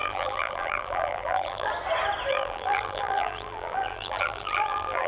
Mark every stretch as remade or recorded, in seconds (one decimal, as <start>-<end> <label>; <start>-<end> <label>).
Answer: 0.0-1.7 remade; 1.7-2.3 recorded; 2.3-5.1 remade